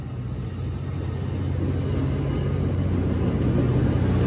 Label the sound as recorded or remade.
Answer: recorded